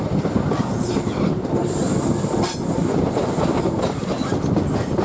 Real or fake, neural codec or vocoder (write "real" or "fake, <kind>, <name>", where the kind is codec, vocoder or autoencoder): fake, vocoder, BigVGAN v2